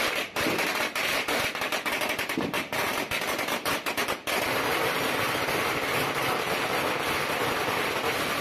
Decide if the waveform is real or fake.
real